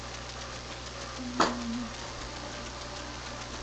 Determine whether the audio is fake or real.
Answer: real